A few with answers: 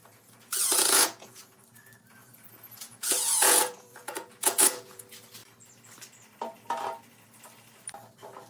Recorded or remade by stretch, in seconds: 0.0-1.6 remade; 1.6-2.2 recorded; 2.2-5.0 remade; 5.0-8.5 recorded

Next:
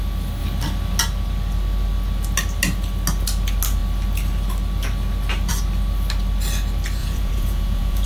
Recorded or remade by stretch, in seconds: 0.0-7.0 recorded; 7.0-8.1 remade

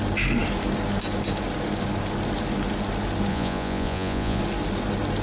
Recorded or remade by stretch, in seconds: 0.0-3.3 recorded; 3.3-4.4 remade; 4.4-5.2 recorded

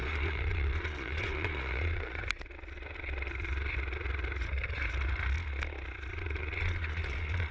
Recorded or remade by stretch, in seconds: 0.0-2.2 remade; 2.2-6.1 recorded; 6.1-7.5 remade

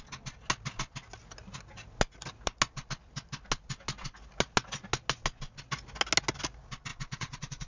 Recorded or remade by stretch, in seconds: 0.0-6.9 recorded; 6.9-7.7 remade

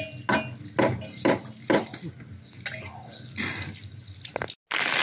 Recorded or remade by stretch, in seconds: 0.0-5.0 recorded